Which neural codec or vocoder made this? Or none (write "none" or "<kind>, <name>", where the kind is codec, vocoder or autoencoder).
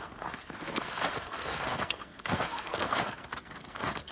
codec, SNAC